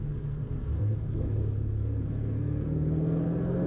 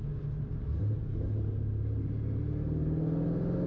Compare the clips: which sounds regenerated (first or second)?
first